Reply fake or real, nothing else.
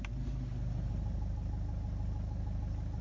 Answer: real